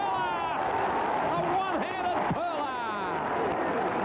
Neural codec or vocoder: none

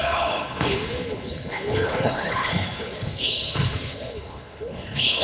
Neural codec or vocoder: codec, HILCodec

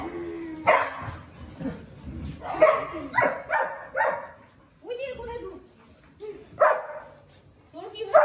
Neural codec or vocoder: none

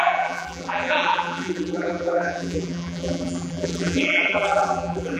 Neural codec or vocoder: vocoder, BigVGAN v2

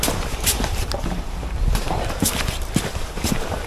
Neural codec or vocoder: vocoder, BigVGAN v2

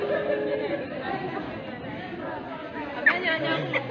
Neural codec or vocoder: none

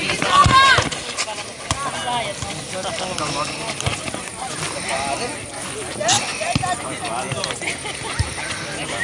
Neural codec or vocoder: none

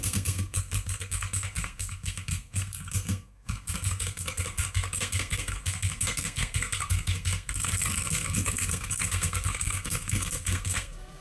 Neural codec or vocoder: codec, SNAC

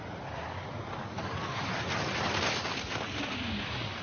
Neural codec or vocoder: none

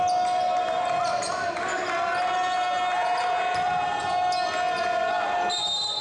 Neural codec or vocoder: none